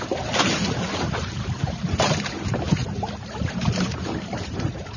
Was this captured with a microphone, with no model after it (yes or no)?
no